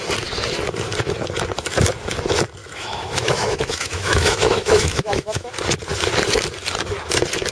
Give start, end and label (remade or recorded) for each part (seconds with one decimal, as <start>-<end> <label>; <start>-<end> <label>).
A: 0.0-2.6 recorded; 2.6-5.5 remade; 5.5-7.5 recorded